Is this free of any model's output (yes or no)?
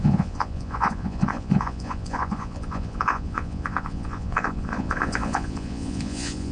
no